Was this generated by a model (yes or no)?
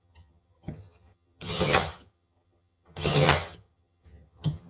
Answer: yes